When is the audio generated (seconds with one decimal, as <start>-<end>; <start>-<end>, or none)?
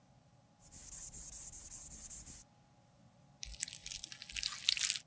none